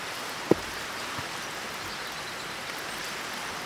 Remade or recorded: recorded